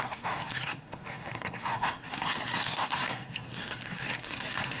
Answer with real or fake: fake